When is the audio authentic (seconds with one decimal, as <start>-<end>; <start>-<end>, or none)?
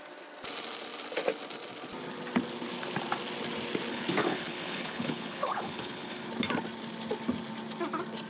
0.0-3.9; 6.3-8.3